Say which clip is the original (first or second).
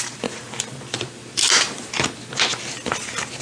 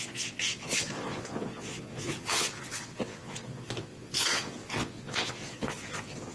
first